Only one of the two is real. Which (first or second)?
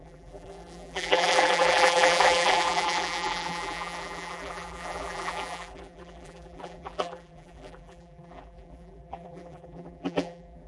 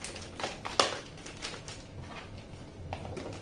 second